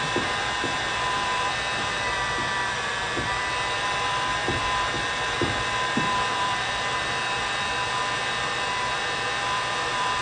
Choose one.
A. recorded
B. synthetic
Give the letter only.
B